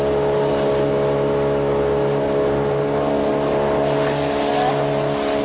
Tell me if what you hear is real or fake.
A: real